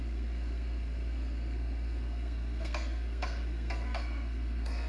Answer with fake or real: fake